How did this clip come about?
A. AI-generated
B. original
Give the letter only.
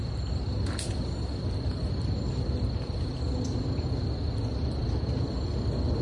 B